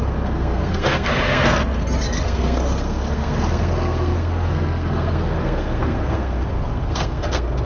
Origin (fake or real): fake